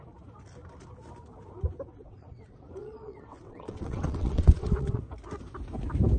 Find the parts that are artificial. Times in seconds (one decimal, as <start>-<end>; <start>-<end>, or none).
1.9-5.0